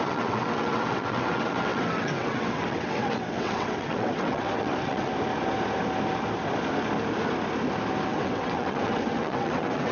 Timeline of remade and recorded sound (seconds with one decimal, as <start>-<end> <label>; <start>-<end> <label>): 0.0-5.1 remade; 5.1-8.1 recorded; 8.1-9.9 remade